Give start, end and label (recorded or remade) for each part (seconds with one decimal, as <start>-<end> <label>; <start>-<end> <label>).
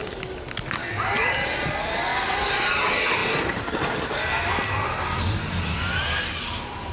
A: 0.0-6.9 recorded